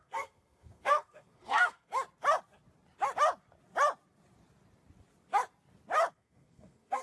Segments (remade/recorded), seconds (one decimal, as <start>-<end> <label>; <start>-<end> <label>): 0.0-1.9 remade; 1.9-6.1 recorded; 6.1-7.0 remade